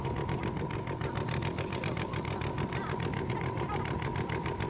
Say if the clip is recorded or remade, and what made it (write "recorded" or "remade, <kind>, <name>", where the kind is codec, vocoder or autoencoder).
recorded